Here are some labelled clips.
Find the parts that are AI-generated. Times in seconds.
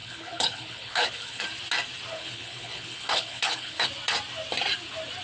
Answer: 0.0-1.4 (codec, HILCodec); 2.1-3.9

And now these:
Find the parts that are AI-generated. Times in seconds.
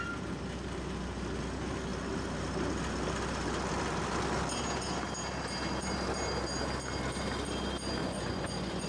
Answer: 8.0-8.9 (vocoder, Vocos)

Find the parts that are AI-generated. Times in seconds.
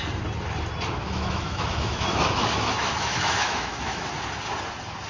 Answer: 1.0-4.1 (autoencoder, DAC-VAE)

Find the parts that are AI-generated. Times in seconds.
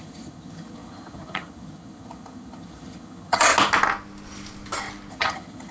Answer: 0.0-3.5 (vocoder, HiFi-GAN); 5.1-5.7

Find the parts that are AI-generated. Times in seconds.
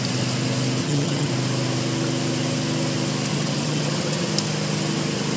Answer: 0.8-1.3 (vocoder, HiFi-GAN); 3.3-4.3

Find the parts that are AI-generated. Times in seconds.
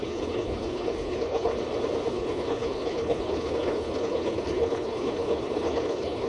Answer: 0.0-1.5 (codec, HILCodec); 2.1-6.3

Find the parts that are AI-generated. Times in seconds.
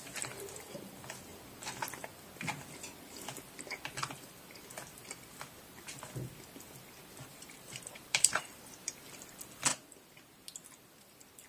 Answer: 7.3-8.9 (vocoder, BigVGAN v2)